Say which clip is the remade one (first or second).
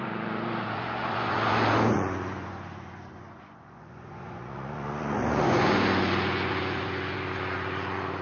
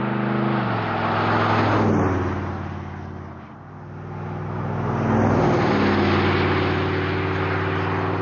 first